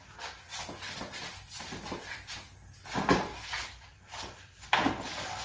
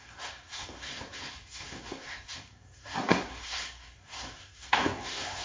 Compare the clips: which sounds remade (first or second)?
second